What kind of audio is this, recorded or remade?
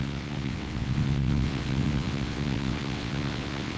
remade